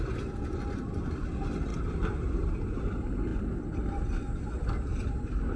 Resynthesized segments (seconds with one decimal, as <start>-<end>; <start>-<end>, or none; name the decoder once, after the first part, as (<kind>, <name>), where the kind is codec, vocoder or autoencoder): none